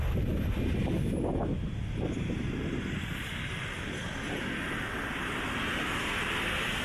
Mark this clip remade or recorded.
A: recorded